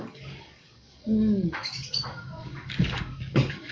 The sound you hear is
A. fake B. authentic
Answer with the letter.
A